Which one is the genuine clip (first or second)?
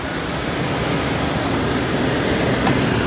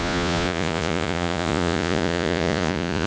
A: first